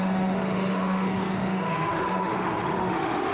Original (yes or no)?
no